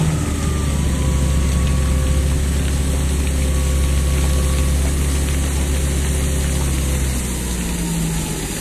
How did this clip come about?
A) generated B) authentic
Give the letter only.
B